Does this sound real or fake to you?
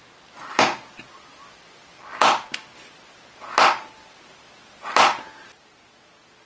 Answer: real